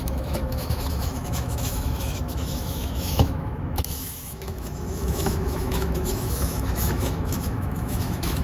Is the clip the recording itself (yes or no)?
no